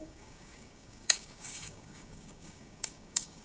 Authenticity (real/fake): fake